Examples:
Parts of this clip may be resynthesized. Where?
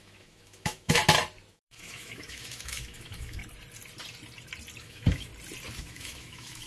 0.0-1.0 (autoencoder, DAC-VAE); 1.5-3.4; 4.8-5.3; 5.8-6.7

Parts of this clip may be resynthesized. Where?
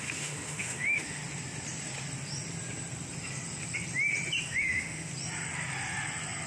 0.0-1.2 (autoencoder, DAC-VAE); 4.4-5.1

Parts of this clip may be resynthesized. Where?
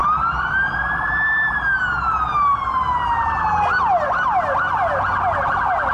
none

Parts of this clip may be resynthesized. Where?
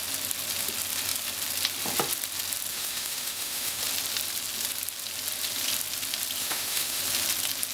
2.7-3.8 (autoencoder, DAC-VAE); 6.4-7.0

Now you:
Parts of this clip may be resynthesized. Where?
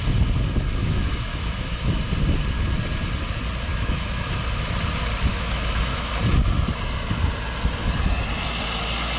0.8-2.0 (autoencoder, DAC-VAE); 3.7-4.4; 5.3-6.1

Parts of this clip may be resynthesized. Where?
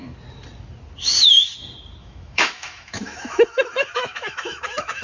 2.0-5.0 (autoencoder, DAC-VAE)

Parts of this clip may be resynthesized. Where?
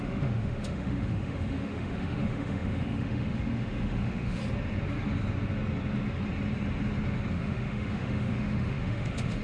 0.0-4.4 (autoencoder, DAC-VAE); 7.3-9.4